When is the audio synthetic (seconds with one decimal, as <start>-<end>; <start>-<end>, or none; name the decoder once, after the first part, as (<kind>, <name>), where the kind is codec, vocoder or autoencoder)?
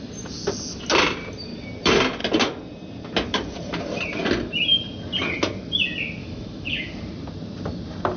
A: 6.2-6.9 (autoencoder, DAC-VAE)